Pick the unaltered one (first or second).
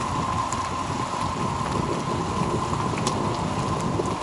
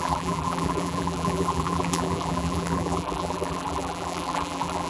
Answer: first